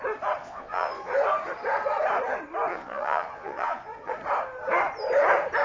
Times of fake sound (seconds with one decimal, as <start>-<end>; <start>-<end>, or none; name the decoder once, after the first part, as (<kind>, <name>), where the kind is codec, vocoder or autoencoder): 0.4-1.1 (vocoder, Vocos); 2.7-4.1